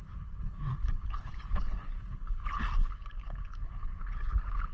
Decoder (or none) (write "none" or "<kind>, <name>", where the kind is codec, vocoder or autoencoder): codec, HILCodec